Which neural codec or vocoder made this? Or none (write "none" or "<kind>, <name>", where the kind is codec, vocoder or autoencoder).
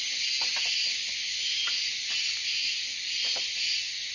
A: none